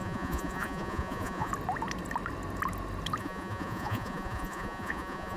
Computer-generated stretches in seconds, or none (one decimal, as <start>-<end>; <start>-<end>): 0.0-1.5; 3.2-5.4